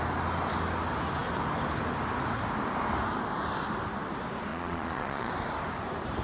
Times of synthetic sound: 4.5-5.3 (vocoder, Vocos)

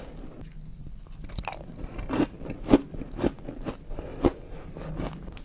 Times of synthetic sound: 0.7-1.3 (vocoder, BigVGAN v2)